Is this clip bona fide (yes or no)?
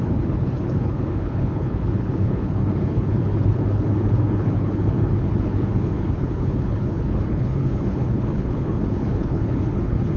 no